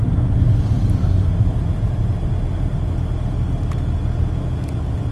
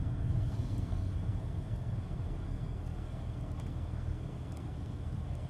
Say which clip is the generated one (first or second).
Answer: second